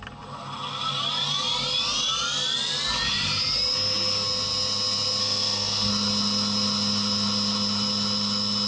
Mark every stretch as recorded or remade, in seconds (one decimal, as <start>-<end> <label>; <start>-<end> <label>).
0.0-5.2 recorded; 5.2-5.9 remade; 5.9-8.7 recorded